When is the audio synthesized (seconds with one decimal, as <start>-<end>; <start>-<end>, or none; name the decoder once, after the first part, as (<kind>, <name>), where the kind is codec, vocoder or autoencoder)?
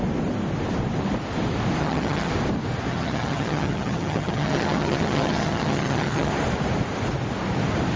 1.8-2.3 (vocoder, HiFi-GAN); 2.9-6.3